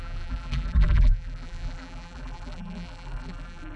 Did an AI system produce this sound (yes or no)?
yes